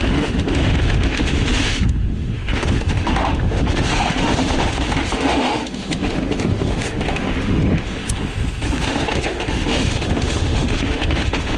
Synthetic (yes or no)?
yes